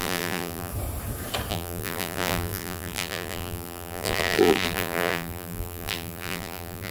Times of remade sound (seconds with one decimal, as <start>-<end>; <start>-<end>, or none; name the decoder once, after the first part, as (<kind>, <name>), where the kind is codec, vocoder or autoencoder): 0.0-0.7 (vocoder, BigVGAN v2); 1.5-6.9

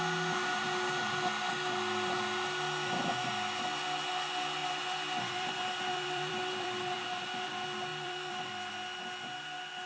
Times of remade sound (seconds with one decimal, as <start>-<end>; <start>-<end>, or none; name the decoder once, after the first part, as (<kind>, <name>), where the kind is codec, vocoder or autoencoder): 4.6-7.5 (vocoder, BigVGAN v2); 7.9-8.7

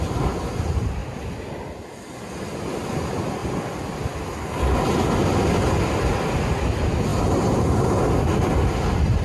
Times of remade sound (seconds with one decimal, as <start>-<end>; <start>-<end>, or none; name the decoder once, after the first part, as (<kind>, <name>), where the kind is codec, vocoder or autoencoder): 7.1-8.0 (vocoder, BigVGAN v2)

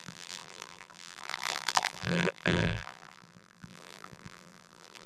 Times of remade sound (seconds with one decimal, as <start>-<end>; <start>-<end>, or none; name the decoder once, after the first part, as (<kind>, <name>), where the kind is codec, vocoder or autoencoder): 0.0-5.1 (vocoder, BigVGAN v2)

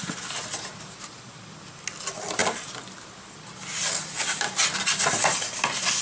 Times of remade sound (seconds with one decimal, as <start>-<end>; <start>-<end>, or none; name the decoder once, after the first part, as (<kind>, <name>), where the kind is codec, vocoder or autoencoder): none

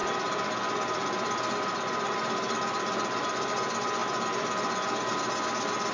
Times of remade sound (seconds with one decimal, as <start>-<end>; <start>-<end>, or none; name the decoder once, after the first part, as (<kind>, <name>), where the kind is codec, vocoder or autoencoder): 0.0-3.5 (vocoder, BigVGAN v2); 4.0-5.1

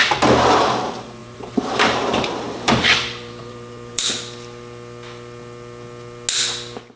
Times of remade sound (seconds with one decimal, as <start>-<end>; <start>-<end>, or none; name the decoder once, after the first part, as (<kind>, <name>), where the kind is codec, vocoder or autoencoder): 1.2-4.1 (vocoder, BigVGAN v2)